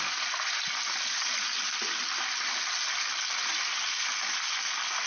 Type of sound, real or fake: real